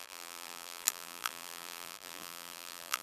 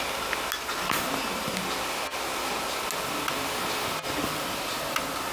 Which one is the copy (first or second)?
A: first